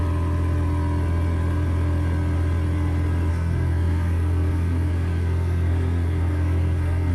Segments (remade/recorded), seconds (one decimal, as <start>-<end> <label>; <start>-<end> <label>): 0.0-3.3 recorded; 3.3-7.1 remade